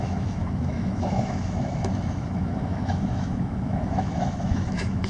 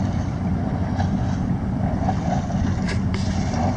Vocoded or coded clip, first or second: first